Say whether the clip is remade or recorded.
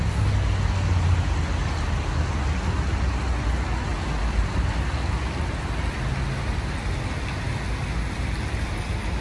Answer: recorded